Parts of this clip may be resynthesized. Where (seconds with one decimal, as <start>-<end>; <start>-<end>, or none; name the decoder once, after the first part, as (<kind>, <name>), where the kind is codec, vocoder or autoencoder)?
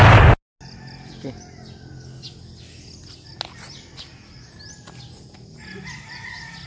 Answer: none